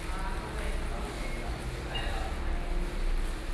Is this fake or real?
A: real